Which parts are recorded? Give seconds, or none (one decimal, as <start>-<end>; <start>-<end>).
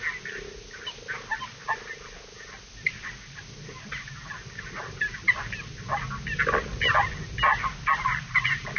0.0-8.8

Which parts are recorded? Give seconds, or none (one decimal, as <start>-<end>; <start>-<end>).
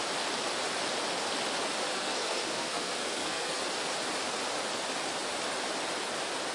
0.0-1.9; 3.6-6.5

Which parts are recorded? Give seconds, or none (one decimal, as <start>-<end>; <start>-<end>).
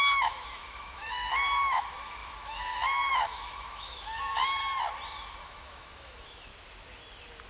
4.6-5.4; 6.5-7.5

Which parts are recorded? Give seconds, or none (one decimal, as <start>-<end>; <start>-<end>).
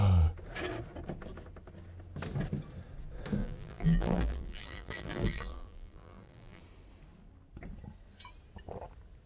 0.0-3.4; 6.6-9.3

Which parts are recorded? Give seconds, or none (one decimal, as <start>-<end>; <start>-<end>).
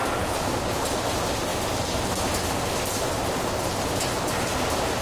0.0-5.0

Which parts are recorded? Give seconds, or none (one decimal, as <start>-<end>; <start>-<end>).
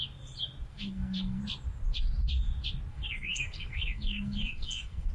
0.0-0.7; 1.4-2.9